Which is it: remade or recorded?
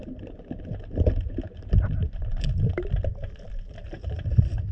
recorded